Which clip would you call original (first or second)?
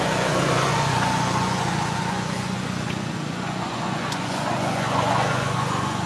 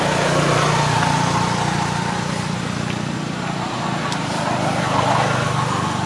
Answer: second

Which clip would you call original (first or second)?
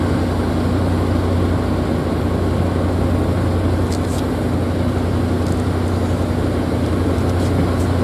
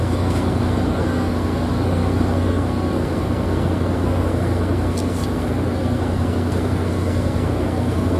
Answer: first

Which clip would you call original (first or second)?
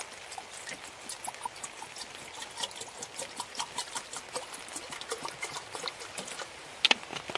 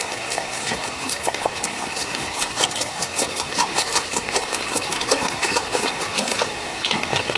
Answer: first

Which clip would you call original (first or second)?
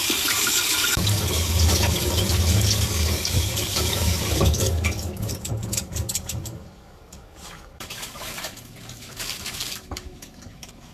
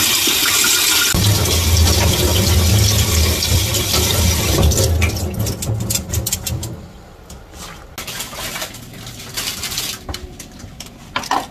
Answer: second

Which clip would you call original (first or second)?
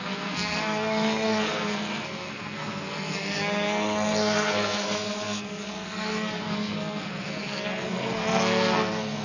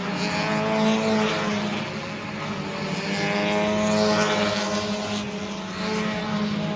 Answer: second